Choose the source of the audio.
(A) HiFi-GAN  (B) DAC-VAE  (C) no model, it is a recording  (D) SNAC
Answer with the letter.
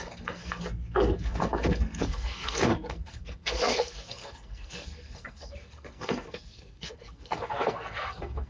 D